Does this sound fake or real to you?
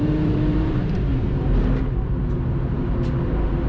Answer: fake